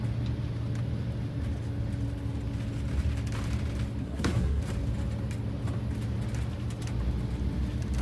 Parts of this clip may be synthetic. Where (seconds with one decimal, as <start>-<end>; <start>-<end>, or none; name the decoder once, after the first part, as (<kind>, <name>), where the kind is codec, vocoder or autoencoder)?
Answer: 4.0-4.6 (codec, SNAC)